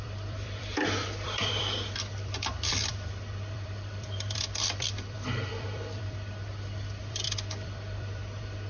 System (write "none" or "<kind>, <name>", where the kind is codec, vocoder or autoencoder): vocoder, BigVGAN v2